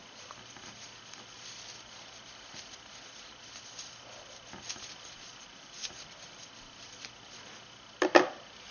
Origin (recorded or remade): recorded